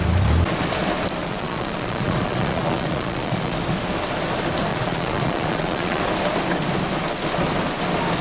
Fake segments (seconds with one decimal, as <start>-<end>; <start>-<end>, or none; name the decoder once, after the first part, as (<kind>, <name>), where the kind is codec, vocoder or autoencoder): 1.2-3.6 (vocoder, Vocos); 4.7-6.0